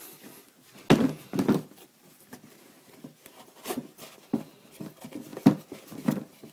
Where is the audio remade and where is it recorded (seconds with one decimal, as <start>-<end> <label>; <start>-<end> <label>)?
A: 0.0-6.5 recorded